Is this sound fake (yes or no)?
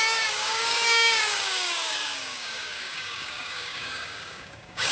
yes